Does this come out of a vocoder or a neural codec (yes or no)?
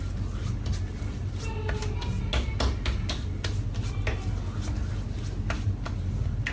no